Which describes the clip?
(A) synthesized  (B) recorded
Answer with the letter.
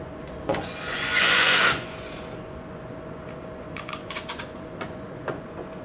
A